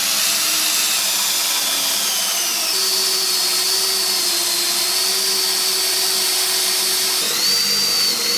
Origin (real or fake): real